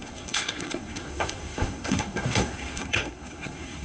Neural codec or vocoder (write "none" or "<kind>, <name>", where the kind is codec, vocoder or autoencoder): codec, SNAC